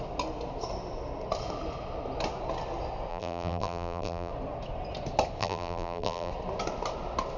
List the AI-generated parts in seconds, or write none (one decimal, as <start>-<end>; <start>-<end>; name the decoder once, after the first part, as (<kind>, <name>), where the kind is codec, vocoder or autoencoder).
3.1-4.3 (vocoder, BigVGAN v2); 5.4-6.3